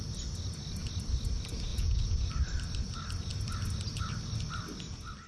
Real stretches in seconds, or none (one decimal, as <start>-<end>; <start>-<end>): 0.0-1.7; 2.3-5.3

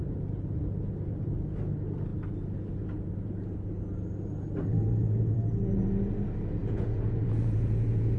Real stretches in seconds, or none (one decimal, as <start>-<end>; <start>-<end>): 0.0-4.7; 5.4-6.6

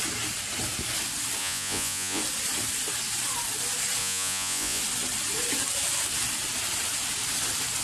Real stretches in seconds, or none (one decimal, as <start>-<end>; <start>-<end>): 0.0-1.4; 2.2-4.0; 4.8-7.8